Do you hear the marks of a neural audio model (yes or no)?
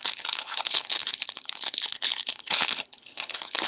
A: yes